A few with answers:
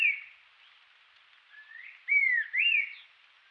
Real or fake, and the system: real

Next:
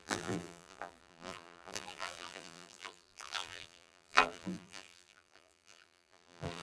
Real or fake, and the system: fake, vocoder, BigVGAN v2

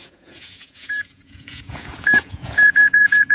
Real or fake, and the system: fake, vocoder, Vocos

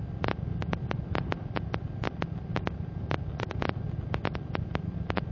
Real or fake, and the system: real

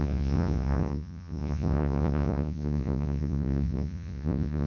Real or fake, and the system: fake, vocoder, Vocos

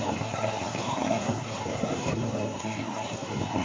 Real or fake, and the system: fake, codec, SNAC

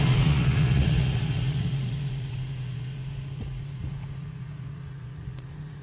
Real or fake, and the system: fake, vocoder, Vocos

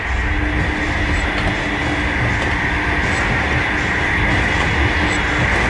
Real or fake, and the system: real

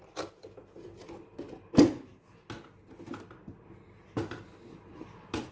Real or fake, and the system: real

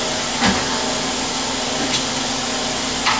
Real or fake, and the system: real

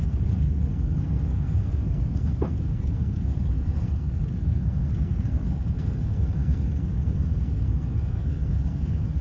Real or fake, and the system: fake, codec, SNAC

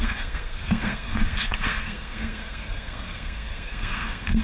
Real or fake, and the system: fake, codec, SNAC